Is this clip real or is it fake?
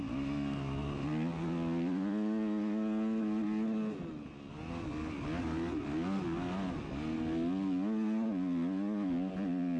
real